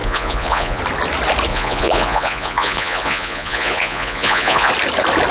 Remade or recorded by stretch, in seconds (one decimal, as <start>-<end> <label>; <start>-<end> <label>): 0.0-0.8 remade; 0.8-1.5 recorded; 1.5-4.7 remade; 4.7-5.3 recorded